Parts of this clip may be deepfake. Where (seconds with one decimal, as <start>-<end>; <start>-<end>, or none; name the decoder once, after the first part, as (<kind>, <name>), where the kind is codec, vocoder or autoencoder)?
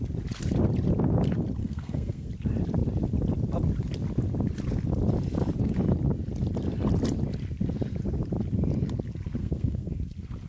1.6-2.3 (codec, SNAC); 9.4-9.9